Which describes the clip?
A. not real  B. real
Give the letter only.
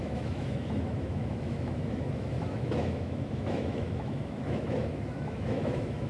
A